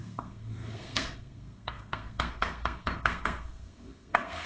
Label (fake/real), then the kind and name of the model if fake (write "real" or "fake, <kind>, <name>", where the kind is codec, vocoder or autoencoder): fake, codec, SNAC